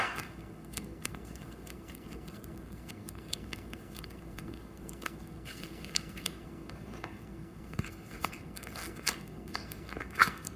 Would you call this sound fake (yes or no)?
yes